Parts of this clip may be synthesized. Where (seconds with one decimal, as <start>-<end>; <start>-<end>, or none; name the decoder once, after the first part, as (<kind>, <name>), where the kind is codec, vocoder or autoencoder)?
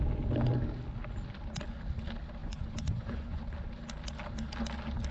2.4-3.4 (vocoder, Vocos)